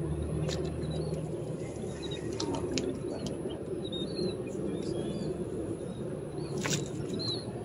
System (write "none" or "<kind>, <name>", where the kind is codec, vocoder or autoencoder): none